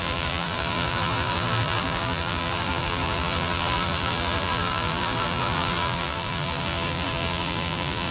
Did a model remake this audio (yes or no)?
yes